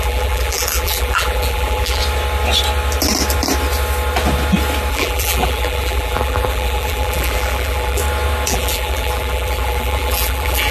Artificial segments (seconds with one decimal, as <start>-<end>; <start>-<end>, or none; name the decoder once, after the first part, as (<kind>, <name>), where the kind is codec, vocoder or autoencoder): 0.0-2.0 (vocoder, BigVGAN v2); 4.9-8.0; 8.5-10.7